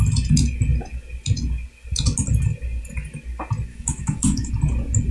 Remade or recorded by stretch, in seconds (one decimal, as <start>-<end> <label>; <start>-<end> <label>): 0.0-3.7 recorded; 3.7-4.5 remade; 4.5-5.1 recorded